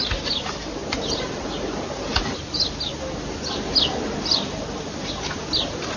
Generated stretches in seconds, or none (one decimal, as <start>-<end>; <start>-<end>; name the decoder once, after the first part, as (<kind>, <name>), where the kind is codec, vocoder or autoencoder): none